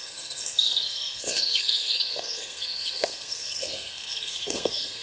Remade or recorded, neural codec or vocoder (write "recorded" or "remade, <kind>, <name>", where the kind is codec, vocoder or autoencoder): remade, codec, SNAC